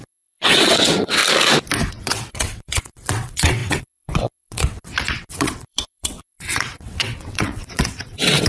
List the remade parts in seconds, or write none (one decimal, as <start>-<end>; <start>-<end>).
0.0-1.2; 1.9-8.5